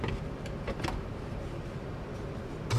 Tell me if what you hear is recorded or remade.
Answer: recorded